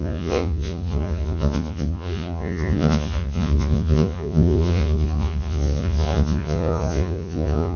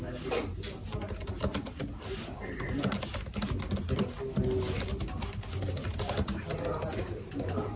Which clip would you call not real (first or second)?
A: first